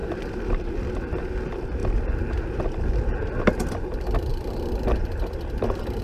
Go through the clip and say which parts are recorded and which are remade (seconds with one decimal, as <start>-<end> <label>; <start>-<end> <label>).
0.0-0.9 remade; 0.9-4.3 recorded; 4.3-6.0 remade